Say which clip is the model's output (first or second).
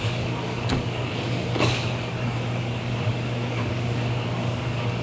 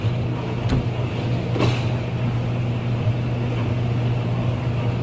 first